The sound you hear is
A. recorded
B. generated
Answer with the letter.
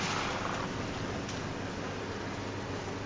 A